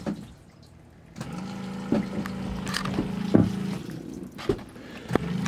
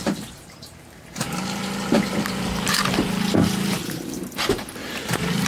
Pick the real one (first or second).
first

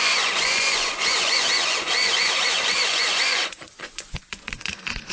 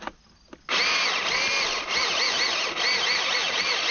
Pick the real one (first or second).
second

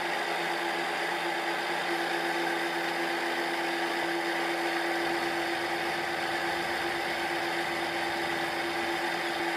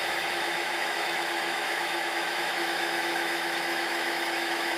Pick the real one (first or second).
first